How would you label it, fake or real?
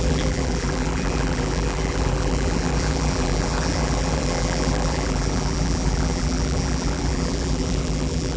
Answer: fake